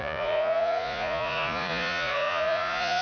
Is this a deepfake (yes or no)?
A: yes